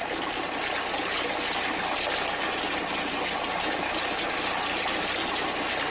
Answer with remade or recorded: recorded